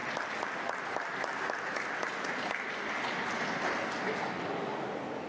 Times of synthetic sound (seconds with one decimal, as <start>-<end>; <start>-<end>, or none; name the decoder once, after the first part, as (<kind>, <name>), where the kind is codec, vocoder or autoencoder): none